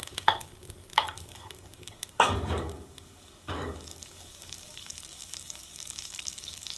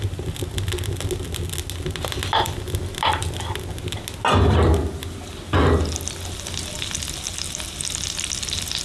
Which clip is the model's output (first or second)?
first